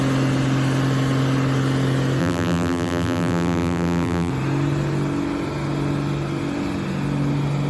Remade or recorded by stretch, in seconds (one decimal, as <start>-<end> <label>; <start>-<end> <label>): 0.0-2.2 recorded; 2.2-4.3 remade; 4.3-7.7 recorded